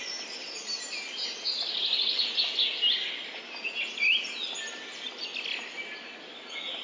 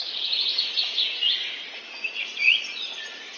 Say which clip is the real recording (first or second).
first